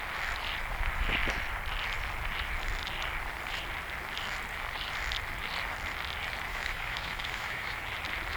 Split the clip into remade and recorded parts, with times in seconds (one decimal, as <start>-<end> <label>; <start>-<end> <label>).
0.0-6.5 recorded; 6.5-7.8 remade; 7.8-8.4 recorded